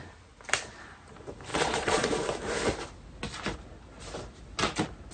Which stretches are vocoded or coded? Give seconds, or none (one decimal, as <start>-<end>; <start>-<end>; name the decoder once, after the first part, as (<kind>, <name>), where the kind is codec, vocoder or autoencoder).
1.5-2.1 (vocoder, Vocos)